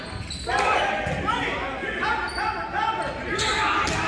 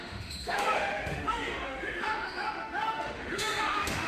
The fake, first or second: second